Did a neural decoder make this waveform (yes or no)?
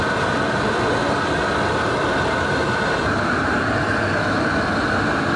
no